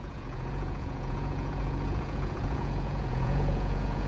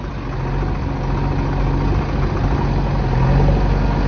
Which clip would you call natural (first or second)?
second